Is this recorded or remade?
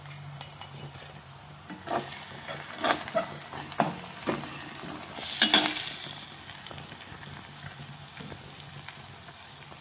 recorded